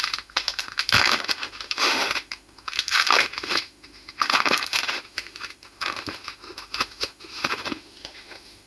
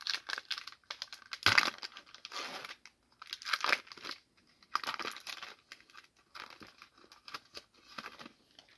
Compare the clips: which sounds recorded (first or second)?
second